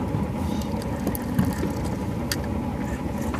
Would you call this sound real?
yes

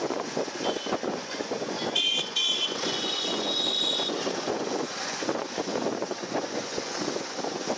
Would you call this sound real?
no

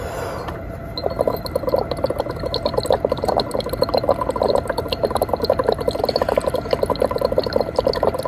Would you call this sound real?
yes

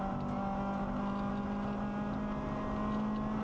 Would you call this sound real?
yes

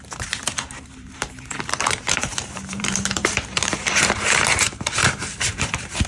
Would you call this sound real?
no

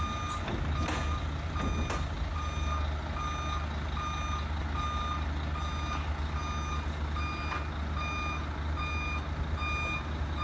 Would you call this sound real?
yes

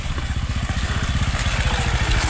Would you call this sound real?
yes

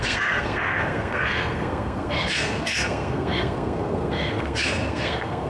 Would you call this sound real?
no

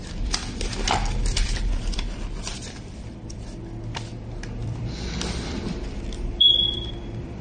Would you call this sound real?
no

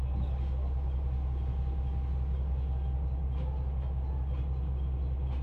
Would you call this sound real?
yes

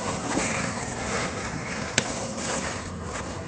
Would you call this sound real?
no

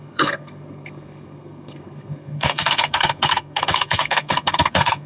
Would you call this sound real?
no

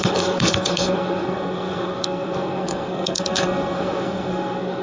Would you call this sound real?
no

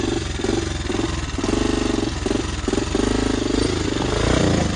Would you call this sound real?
yes